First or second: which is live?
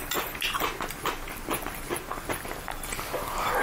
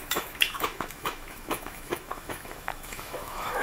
first